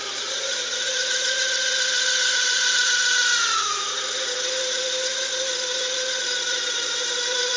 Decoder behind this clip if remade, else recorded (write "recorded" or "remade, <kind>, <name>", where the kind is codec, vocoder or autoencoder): remade, vocoder, BigVGAN v2